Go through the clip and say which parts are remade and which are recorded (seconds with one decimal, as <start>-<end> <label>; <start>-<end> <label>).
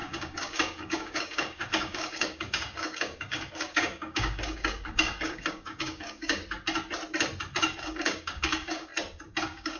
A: 0.0-6.4 remade; 6.4-7.6 recorded; 7.6-8.9 remade; 8.9-9.4 recorded; 9.4-9.8 remade